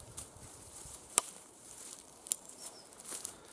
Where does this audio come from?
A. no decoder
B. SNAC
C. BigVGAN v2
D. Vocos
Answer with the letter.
C